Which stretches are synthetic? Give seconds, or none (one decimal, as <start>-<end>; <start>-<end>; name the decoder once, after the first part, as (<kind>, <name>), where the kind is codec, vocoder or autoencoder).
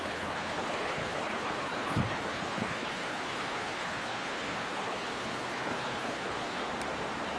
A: 0.0-6.6 (codec, HILCodec)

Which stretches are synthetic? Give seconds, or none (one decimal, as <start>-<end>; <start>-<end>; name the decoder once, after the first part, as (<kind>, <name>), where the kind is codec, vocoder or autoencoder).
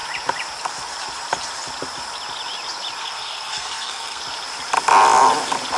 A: 3.0-4.2 (codec, SNAC)